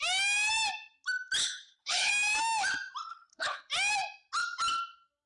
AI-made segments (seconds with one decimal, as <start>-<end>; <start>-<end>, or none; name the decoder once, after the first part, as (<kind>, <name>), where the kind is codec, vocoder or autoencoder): 1.4-2.1 (codec, HILCodec); 3.1-3.6